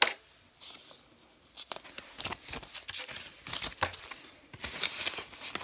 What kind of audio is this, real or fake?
real